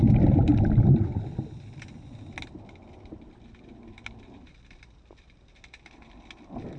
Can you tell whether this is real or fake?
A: real